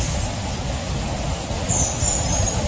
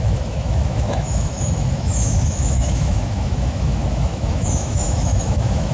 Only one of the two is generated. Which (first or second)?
second